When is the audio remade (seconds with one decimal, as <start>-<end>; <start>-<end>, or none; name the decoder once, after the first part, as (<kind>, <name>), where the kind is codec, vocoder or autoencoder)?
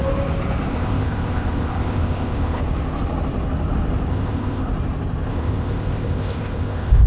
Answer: 0.7-2.6 (codec, ZipCodec); 4.1-4.6; 5.3-7.1